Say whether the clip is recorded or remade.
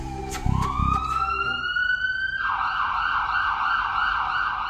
recorded